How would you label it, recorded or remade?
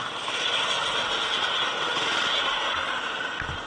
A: recorded